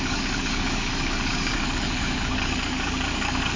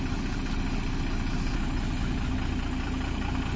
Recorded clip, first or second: second